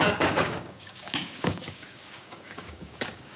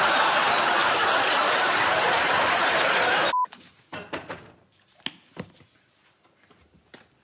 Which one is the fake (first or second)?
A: first